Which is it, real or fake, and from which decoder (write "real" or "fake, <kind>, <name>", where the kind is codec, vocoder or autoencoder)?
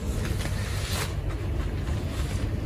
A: real